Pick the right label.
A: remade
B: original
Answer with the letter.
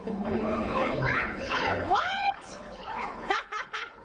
A